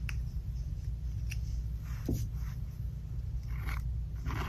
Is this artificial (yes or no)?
no